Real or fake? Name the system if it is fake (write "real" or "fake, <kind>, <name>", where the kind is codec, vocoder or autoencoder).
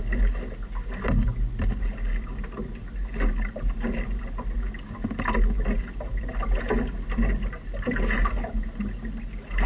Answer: real